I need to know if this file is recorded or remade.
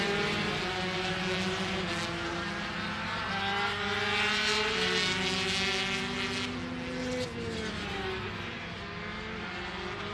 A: recorded